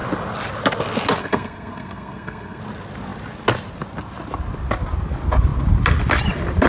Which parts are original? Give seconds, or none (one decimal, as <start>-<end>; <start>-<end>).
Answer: 0.0-1.2; 2.6-6.7